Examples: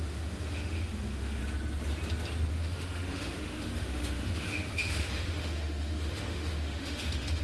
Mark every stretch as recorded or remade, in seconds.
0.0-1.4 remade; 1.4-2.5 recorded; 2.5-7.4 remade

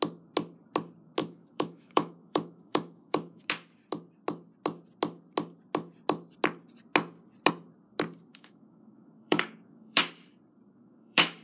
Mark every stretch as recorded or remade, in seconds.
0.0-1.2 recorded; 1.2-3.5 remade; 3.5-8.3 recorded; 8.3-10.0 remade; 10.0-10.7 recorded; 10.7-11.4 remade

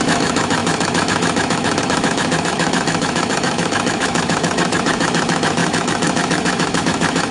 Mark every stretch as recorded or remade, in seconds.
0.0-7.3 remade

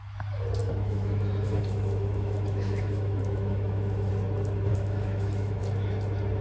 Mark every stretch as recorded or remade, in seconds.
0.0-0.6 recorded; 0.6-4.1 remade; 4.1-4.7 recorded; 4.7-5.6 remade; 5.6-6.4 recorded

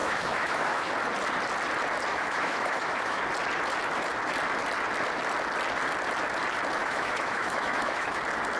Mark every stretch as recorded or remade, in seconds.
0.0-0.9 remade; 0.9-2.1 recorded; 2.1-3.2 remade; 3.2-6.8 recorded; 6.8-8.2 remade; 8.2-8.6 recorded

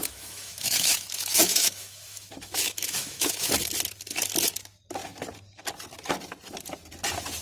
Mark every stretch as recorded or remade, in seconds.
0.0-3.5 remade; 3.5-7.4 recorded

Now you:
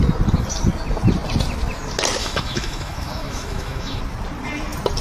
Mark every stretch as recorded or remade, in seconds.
0.0-2.2 recorded; 2.2-4.0 remade; 4.0-5.0 recorded